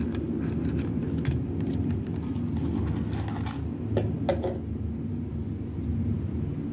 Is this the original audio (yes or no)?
yes